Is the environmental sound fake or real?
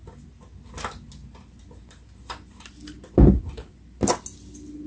real